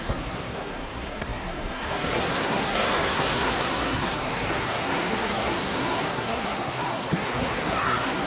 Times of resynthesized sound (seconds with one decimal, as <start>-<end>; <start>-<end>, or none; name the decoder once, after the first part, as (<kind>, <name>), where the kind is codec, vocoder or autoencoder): 0.0-8.3 (codec, SNAC)